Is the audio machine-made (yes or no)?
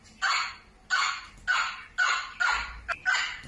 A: no